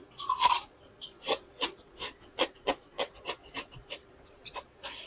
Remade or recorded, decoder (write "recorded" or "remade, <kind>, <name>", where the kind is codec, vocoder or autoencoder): remade, vocoder, Vocos